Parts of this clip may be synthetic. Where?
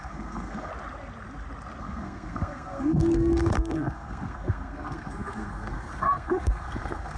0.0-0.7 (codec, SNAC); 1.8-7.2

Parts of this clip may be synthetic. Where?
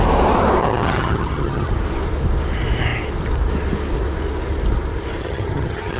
0.6-1.7 (vocoder, HiFi-GAN); 5.2-6.0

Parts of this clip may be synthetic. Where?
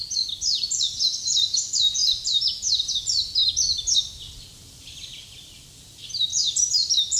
0.0-3.4 (vocoder, BigVGAN v2); 4.2-7.2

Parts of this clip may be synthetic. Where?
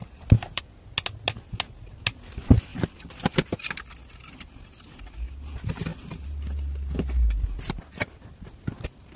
0.0-0.6 (vocoder, BigVGAN v2); 2.7-3.9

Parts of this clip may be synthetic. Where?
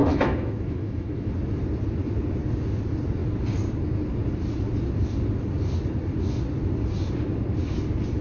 0.0-1.3 (autoencoder, DAC-VAE)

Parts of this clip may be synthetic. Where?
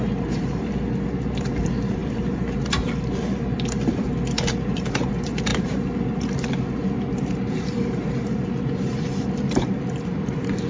0.0-10.7 (vocoder, BigVGAN v2)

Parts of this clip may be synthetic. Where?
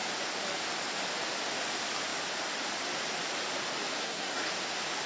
4.0-4.5 (codec, SNAC)